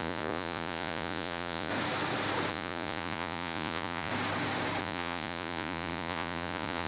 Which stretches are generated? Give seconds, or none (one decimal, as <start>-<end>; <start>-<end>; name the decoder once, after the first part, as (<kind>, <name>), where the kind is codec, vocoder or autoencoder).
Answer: 0.0-1.7 (vocoder, Vocos); 2.5-4.1; 4.8-6.9